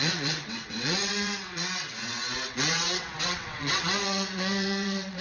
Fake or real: fake